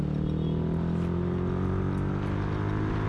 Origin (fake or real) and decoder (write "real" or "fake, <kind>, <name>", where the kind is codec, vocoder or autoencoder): real